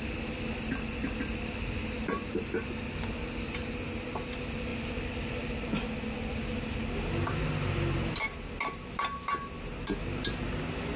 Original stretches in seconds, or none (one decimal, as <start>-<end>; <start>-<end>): 0.0-11.0